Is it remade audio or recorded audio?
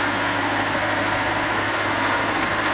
remade